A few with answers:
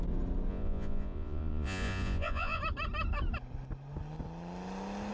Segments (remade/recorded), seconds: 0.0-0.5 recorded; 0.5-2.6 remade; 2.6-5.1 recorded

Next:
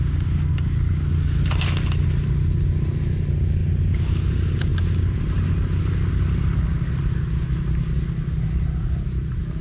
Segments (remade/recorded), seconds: 0.0-9.6 recorded

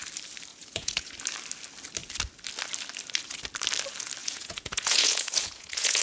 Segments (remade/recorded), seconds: 0.0-0.5 recorded; 0.5-1.1 remade; 1.1-4.2 recorded; 4.2-6.0 remade

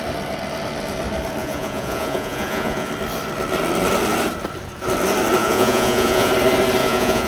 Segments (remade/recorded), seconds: 0.0-1.4 recorded; 1.4-2.9 remade; 2.9-5.4 recorded; 5.4-6.3 remade; 6.3-6.8 recorded; 6.8-7.3 remade

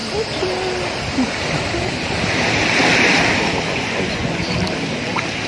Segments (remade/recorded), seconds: 0.0-3.7 recorded; 3.7-4.4 remade; 4.4-5.5 recorded